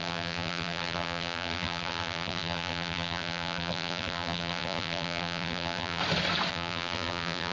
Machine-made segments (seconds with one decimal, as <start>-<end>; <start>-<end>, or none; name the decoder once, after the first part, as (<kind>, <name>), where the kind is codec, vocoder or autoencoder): 0.0-6.0 (vocoder, BigVGAN v2); 6.5-7.5